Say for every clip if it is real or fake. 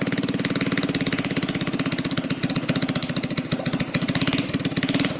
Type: real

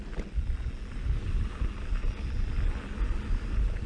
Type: real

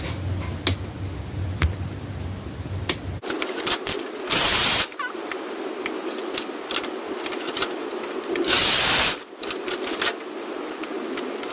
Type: real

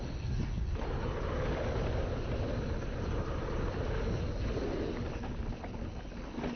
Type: real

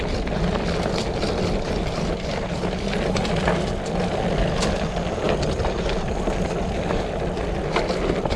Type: real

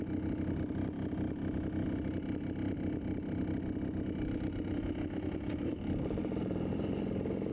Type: real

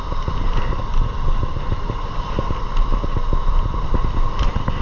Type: real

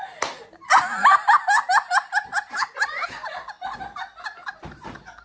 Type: real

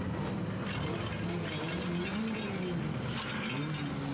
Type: real